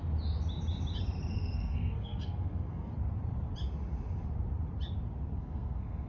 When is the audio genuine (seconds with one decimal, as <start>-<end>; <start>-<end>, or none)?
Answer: 0.0-1.3; 2.9-5.4